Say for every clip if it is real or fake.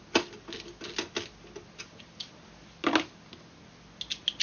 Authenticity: real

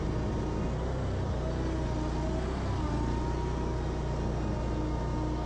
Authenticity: real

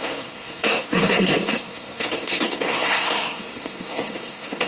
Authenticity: fake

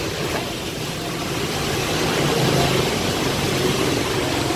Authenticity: real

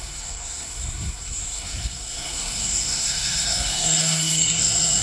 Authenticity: fake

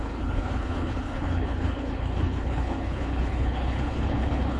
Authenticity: fake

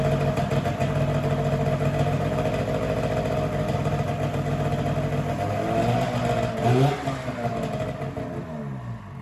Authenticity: real